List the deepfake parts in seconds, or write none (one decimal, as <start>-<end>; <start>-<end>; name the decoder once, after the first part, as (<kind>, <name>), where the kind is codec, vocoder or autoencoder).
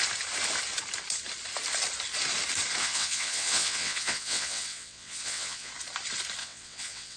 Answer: 2.8-5.7 (vocoder, WaveNeXt); 6.4-7.2